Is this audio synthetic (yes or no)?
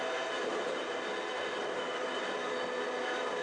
no